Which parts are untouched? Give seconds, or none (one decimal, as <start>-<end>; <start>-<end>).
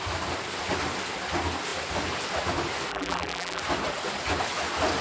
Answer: 0.0-2.9; 3.6-5.0